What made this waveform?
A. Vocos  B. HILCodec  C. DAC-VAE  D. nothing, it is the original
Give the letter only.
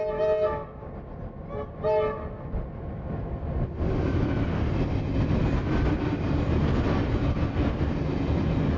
D